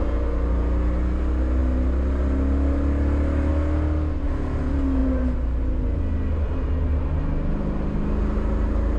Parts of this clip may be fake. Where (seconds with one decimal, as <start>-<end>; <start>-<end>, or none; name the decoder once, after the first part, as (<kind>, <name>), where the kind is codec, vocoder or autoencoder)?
none